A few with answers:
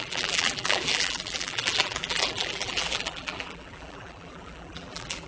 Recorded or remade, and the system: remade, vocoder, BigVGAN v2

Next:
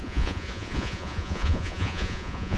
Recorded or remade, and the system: remade, vocoder, Vocos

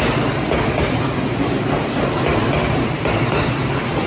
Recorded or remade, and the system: recorded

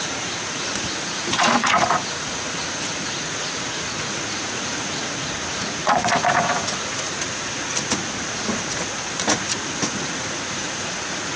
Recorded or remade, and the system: remade, vocoder, Vocos